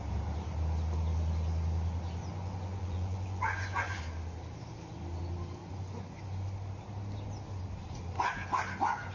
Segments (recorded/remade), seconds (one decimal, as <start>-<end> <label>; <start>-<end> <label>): 0.0-2.2 recorded; 2.2-4.0 remade; 4.0-5.6 recorded; 5.6-6.2 remade; 6.2-9.1 recorded